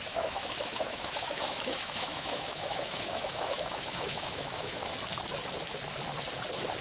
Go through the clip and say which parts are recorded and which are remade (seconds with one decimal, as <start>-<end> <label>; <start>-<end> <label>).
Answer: 0.0-4.8 remade; 4.8-6.8 recorded